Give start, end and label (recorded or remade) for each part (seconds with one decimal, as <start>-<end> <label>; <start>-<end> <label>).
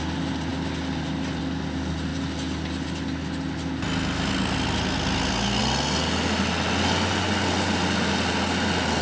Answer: 0.0-9.0 recorded